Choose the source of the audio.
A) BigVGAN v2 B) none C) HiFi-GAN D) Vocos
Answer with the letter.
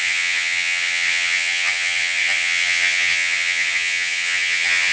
C